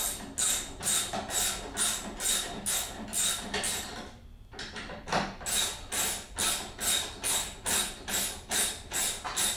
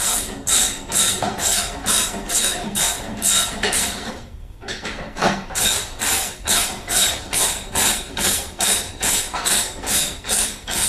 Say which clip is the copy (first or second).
second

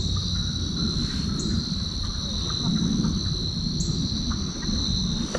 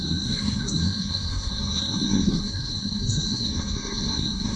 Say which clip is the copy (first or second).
second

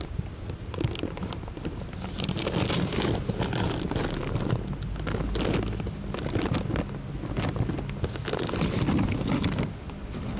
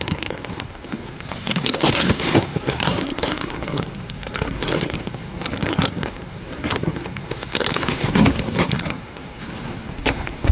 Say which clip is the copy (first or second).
second